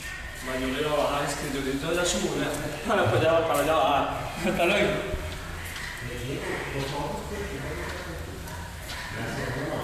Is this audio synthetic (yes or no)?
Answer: no